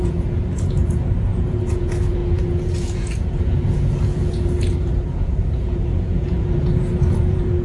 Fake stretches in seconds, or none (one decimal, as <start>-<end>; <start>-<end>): 0.0-7.6